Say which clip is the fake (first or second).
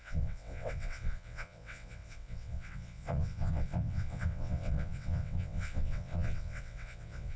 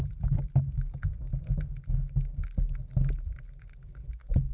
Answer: first